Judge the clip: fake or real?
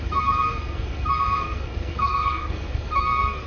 fake